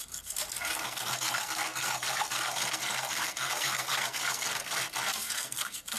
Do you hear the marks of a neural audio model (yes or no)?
yes